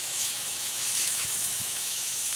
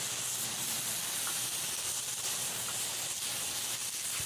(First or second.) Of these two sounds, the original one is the second